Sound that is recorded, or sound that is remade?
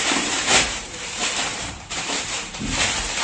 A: remade